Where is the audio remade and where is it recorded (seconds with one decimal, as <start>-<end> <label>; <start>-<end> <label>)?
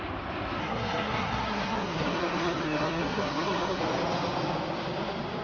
0.0-0.6 recorded; 0.6-3.8 remade; 3.8-5.4 recorded